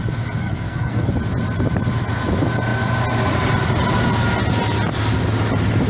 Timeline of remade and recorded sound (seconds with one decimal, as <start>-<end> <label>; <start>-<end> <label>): 0.0-0.4 recorded; 0.4-1.1 remade; 1.1-5.9 recorded